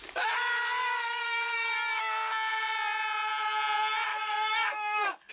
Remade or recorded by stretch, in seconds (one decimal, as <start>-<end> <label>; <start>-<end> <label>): 0.0-0.8 recorded; 0.8-2.0 remade; 2.0-4.1 recorded; 4.1-5.3 remade